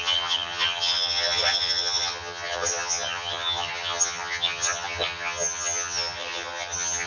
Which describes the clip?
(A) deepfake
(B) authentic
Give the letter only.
A